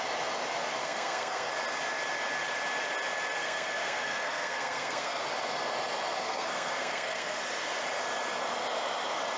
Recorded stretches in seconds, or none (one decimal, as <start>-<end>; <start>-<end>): 0.0-0.8; 1.5-3.4; 5.2-6.2; 7.4-9.4